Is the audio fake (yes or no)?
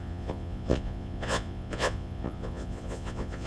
yes